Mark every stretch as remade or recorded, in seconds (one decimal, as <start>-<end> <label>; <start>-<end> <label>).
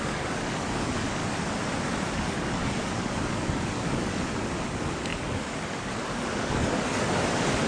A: 0.0-1.2 remade; 1.2-1.9 recorded; 1.9-7.7 remade